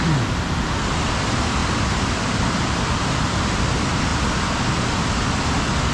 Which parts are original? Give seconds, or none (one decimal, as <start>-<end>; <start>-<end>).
0.0-1.6; 3.5-4.1; 4.8-5.9